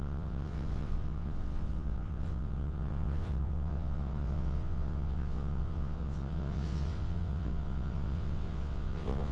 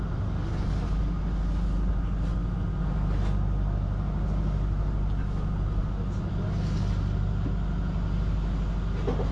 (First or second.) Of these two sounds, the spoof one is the first